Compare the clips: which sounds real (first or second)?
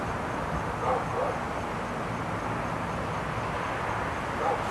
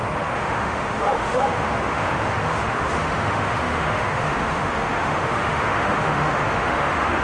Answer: first